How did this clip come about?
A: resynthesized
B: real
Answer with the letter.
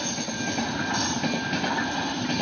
B